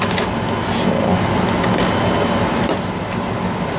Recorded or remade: recorded